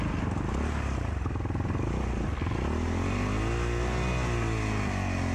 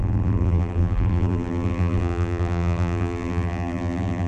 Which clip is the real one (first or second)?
first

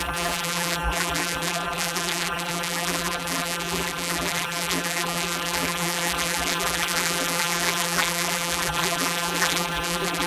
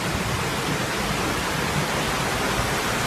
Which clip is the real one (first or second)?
second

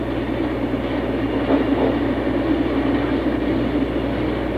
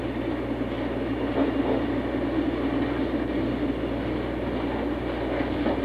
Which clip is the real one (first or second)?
second